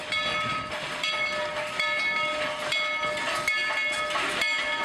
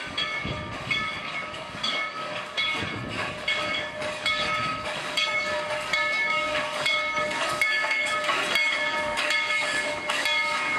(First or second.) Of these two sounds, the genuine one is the first